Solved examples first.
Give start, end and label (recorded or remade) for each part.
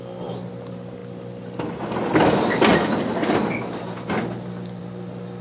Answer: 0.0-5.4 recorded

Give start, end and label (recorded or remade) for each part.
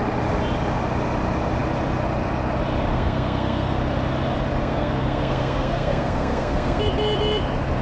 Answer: 0.0-2.9 recorded; 2.9-3.8 remade; 3.8-4.6 recorded; 4.6-6.8 remade; 6.8-7.8 recorded